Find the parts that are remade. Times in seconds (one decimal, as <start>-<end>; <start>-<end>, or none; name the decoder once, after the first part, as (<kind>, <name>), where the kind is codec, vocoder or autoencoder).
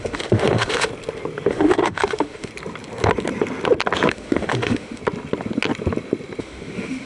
0.0-0.9 (autoencoder, DAC-VAE); 1.5-2.5; 4.1-5.0; 6.4-7.1